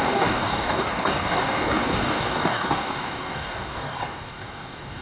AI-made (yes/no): yes